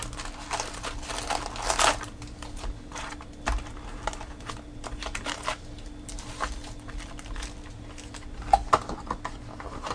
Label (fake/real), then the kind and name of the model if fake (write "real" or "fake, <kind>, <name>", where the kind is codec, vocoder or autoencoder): real